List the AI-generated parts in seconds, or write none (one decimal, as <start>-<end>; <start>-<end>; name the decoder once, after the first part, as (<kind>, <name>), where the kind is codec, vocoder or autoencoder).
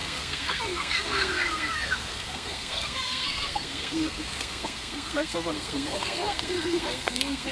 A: 0.0-7.5 (codec, SNAC)